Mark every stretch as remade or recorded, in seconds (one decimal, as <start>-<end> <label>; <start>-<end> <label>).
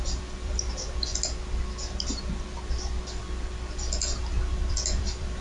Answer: 0.0-1.1 remade; 1.1-4.3 recorded; 4.3-5.4 remade